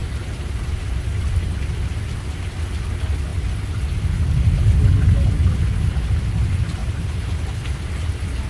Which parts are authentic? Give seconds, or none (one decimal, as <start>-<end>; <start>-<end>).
0.7-6.8; 7.4-8.5